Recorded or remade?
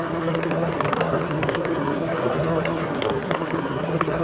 remade